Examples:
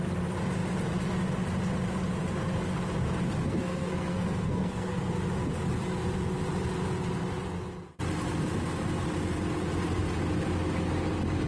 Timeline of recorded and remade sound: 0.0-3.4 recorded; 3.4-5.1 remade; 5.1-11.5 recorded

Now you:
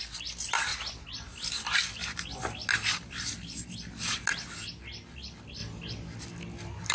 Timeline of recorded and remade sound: 0.0-6.9 recorded

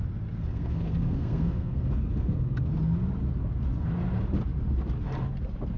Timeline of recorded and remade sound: 0.0-0.4 recorded; 0.4-2.7 remade; 2.7-5.8 recorded

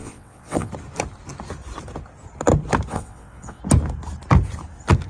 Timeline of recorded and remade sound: 0.0-0.7 remade; 0.7-2.9 recorded; 2.9-3.6 remade; 3.6-5.1 recorded

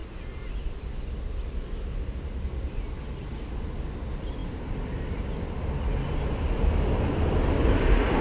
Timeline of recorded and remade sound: 0.0-8.2 recorded

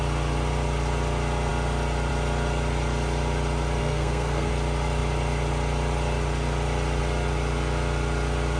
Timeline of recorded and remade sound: 0.0-3.8 recorded; 3.8-4.5 remade; 4.5-8.6 recorded